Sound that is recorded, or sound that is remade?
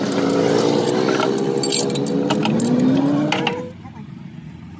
recorded